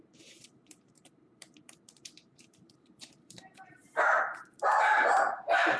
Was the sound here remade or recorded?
remade